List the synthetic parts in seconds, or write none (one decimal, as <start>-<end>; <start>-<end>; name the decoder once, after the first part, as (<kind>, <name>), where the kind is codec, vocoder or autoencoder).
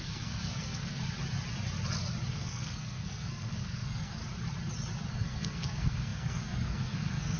0.0-1.0 (codec, SNAC); 2.3-4.2; 5.1-7.4